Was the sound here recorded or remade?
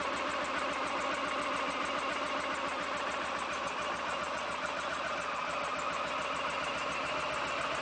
recorded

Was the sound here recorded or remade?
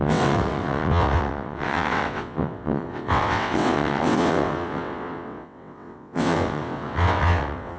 remade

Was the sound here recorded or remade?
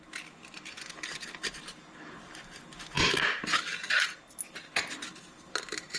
recorded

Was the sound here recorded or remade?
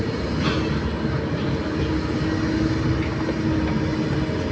recorded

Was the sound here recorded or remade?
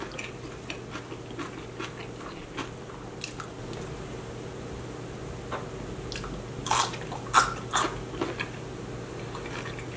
recorded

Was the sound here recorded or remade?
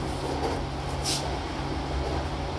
recorded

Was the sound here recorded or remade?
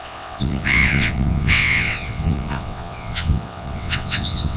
remade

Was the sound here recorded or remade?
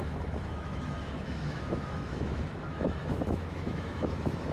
remade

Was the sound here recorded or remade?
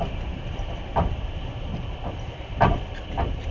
remade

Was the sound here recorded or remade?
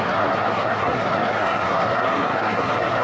remade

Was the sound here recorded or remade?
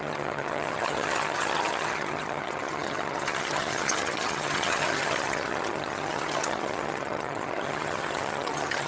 remade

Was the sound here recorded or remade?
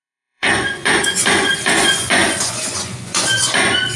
remade